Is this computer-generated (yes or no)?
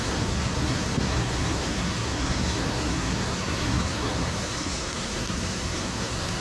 yes